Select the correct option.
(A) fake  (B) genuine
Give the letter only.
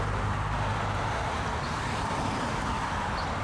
B